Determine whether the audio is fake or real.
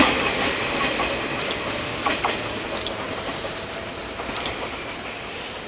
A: real